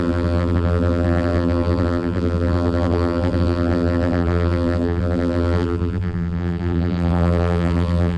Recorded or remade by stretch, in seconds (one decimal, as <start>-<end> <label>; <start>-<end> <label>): 0.0-8.2 remade